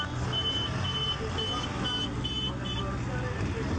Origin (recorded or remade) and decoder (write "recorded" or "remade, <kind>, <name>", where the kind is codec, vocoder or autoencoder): recorded